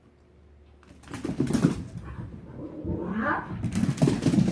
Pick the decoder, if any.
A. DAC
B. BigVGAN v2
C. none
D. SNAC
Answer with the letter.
C